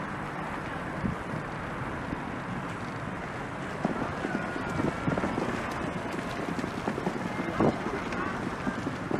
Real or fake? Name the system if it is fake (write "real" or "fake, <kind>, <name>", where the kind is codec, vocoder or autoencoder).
real